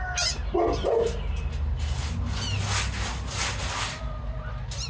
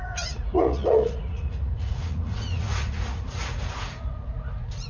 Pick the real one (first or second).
first